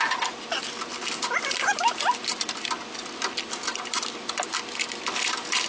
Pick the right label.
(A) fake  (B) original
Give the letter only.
A